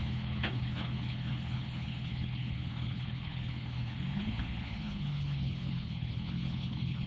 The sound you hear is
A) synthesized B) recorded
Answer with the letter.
A